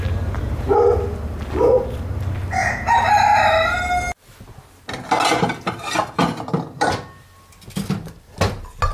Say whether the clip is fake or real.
real